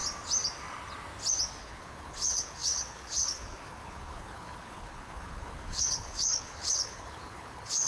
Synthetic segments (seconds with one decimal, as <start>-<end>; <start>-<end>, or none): 1.6-7.9